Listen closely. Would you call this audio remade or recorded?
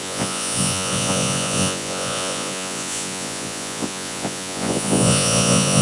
remade